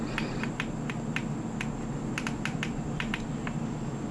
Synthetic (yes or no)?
no